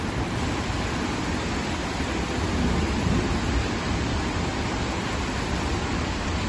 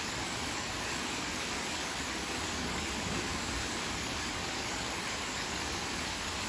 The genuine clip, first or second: first